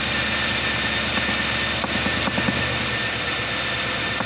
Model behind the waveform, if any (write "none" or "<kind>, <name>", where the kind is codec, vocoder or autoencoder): none